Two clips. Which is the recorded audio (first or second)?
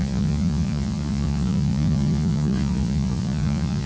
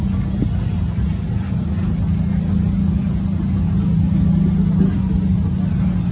second